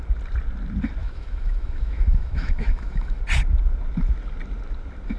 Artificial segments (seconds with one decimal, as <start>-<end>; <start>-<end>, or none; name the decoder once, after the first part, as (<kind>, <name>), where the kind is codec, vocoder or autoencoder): 1.0-3.2 (autoencoder, DAC-VAE)